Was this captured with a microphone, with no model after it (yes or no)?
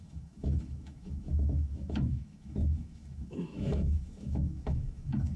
no